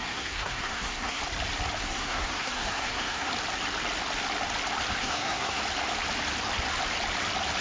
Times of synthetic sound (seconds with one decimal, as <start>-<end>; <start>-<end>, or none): 0.0-1.2; 1.8-3.3; 5.0-5.6